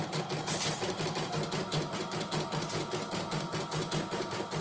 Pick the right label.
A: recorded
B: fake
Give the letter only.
A